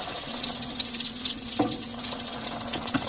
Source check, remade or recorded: remade